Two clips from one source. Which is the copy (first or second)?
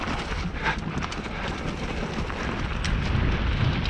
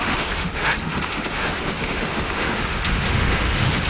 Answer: second